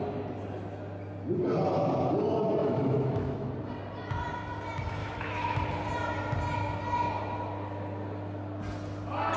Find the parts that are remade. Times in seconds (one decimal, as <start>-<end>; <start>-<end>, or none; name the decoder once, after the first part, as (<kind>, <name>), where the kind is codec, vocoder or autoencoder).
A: 2.6-3.5 (autoencoder, DAC-VAE); 5.0-5.6